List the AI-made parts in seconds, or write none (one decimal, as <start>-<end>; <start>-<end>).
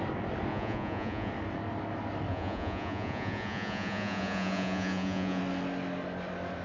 0.5-1.3; 2.3-5.4